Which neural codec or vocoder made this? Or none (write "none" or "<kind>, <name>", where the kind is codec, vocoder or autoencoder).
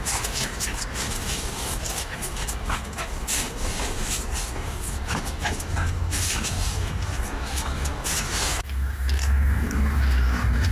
codec, DAC